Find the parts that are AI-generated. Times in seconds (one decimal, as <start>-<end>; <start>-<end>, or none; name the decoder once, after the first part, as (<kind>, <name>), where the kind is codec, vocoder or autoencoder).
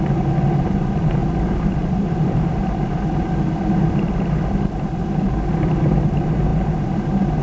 0.0-7.4 (vocoder, BigVGAN v2)